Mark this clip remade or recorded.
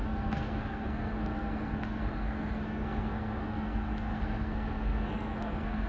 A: remade